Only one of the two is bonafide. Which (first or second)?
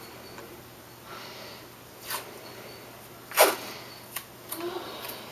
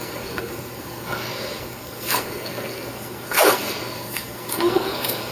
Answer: first